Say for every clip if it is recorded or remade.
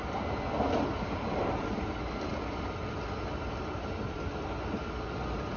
recorded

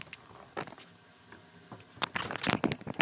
recorded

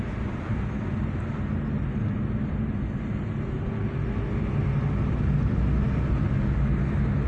recorded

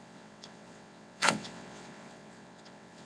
remade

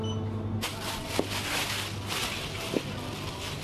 recorded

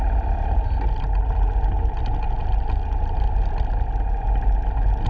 recorded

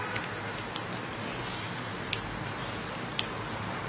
recorded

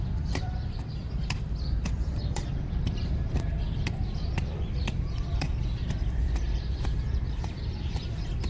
remade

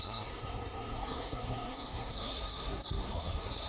remade